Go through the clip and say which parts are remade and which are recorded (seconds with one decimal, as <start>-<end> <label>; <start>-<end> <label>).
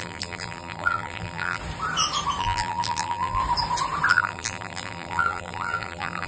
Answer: 0.0-1.6 remade; 1.6-2.4 recorded; 2.4-3.4 remade; 3.4-4.1 recorded; 4.1-6.3 remade